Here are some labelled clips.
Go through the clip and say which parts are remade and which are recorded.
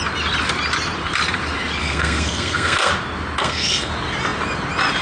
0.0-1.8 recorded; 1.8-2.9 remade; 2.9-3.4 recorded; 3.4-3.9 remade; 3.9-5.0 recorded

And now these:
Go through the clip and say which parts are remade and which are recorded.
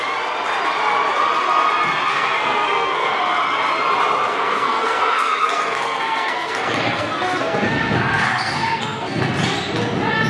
0.0-2.1 recorded; 2.1-3.2 remade; 3.2-4.3 recorded; 4.3-9.2 remade; 9.2-10.3 recorded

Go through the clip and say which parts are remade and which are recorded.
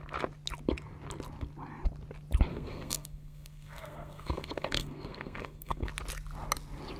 0.0-2.5 recorded; 2.5-5.9 remade; 5.9-7.0 recorded